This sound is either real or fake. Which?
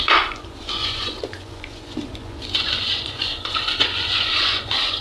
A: fake